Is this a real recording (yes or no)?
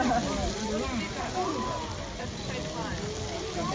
yes